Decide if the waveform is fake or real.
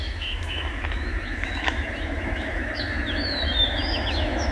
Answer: fake